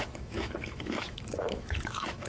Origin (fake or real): fake